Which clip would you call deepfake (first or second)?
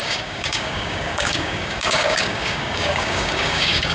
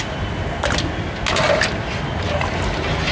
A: first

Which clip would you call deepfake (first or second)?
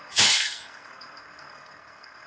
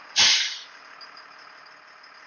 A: first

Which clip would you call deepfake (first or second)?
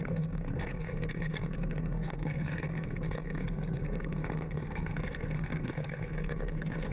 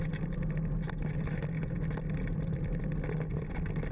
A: first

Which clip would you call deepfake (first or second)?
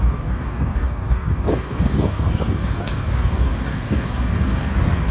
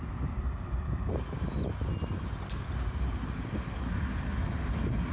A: first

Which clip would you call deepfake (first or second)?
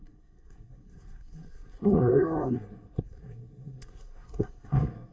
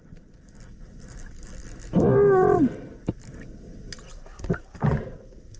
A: first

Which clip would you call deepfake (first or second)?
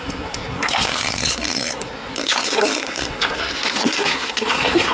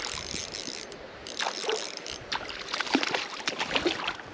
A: first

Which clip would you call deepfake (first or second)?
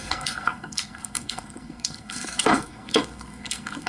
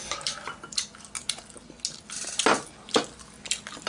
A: first